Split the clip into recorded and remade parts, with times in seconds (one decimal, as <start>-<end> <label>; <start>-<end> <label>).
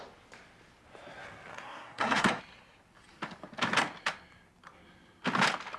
0.0-1.5 recorded; 1.5-2.4 remade; 2.4-5.8 recorded